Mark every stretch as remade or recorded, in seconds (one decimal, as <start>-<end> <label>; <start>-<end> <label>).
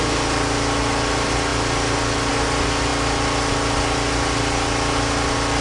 0.0-5.6 recorded